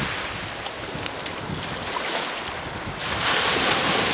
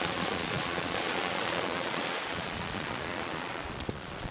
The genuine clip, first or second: first